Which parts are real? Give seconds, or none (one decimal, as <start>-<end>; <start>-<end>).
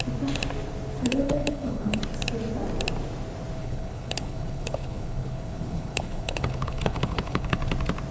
0.0-1.0; 2.0-3.6; 7.6-8.1